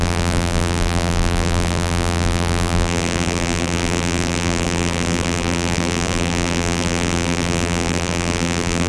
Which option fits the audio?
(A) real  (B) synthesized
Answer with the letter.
B